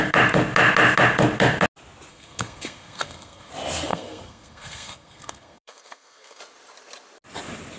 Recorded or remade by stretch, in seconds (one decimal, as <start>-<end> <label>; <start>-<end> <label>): 0.0-2.1 recorded; 2.1-3.5 remade; 3.5-3.9 recorded; 3.9-6.4 remade; 6.4-7.8 recorded